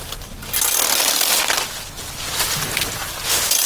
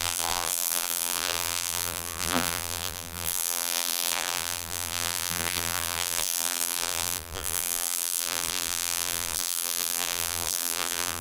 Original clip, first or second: first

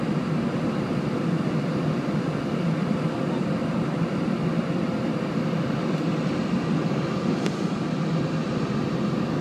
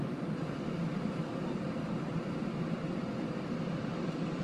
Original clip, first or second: first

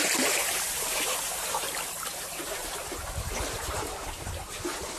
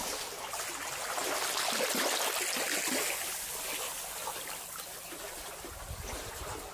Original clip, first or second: second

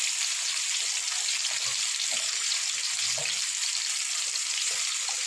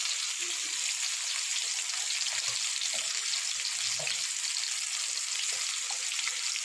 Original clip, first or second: second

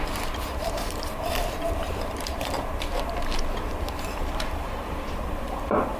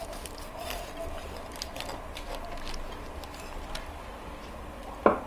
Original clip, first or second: second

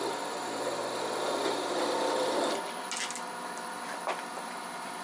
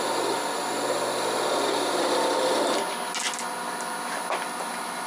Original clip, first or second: second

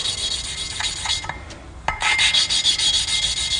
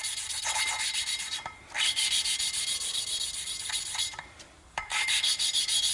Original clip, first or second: first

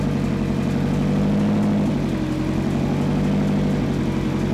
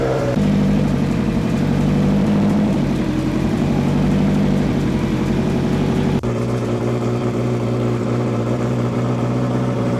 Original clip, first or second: first